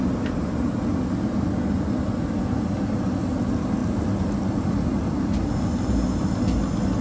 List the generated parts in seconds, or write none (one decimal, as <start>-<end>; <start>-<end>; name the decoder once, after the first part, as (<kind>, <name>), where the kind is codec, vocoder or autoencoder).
none